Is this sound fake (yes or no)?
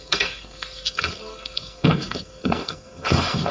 yes